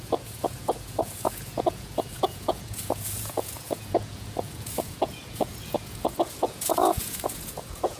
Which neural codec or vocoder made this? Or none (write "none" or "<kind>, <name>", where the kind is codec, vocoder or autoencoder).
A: vocoder, Vocos